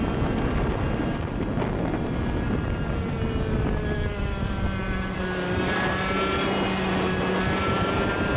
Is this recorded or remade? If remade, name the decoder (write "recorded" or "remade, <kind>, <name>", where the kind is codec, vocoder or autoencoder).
recorded